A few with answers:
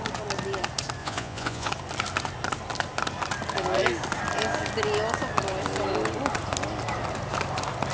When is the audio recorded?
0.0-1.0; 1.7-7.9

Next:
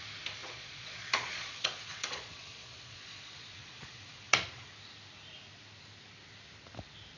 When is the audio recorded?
0.0-0.4; 4.7-7.2

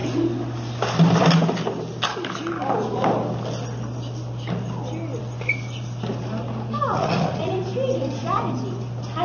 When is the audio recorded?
0.0-6.9; 7.5-9.2

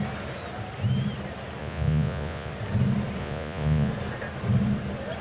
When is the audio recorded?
0.0-1.6; 2.5-3.2; 3.9-5.2

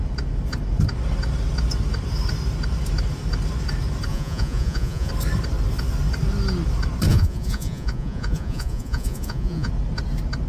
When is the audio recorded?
0.0-4.1; 5.1-7.1; 9.7-10.5

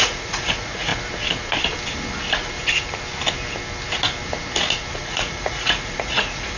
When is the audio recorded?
0.9-4.9